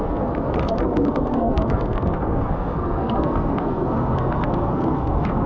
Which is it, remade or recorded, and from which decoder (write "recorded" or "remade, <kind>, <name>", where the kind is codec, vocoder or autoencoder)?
remade, codec, SNAC